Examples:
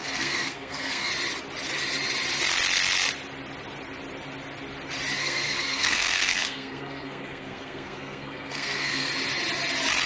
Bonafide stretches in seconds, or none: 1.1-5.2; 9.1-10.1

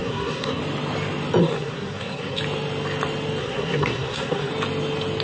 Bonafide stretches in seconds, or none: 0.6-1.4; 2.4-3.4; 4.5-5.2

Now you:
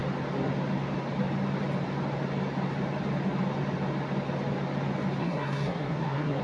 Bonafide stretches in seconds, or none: 0.0-5.2

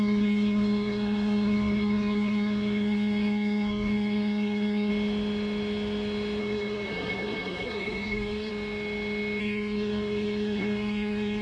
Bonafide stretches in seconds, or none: 4.9-6.4; 8.5-9.4

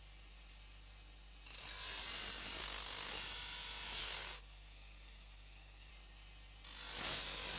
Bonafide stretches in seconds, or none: 0.0-2.6; 3.1-4.0; 5.9-7.6

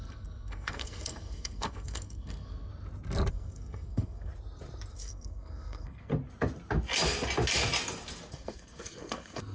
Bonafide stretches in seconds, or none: 2.7-3.3; 4.3-4.9; 6.1-8.3

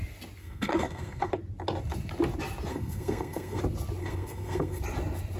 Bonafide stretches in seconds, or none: 0.0-0.4; 1.3-2.7; 3.6-4.0; 4.8-5.4

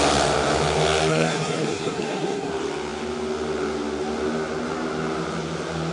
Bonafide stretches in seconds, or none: 0.0-1.1; 2.5-5.9